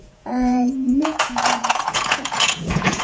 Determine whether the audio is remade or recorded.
remade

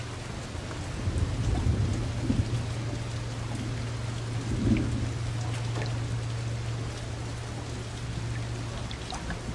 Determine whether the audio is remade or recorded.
recorded